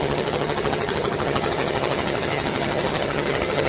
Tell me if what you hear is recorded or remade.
remade